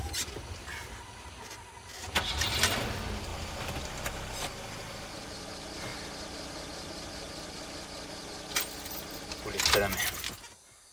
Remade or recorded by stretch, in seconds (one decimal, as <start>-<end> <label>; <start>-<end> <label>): 0.0-10.9 recorded